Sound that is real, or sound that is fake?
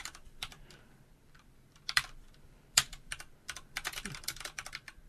fake